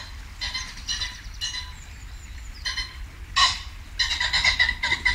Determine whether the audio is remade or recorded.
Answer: recorded